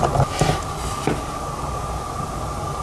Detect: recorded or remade recorded